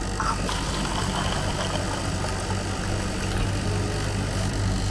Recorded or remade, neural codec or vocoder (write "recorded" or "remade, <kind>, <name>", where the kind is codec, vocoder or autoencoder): recorded